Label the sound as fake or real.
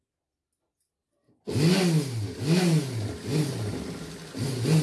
real